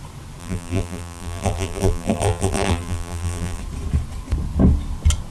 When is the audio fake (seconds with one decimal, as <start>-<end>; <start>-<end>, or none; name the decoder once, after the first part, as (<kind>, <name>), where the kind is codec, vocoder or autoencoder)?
0.4-3.6 (vocoder, BigVGAN v2)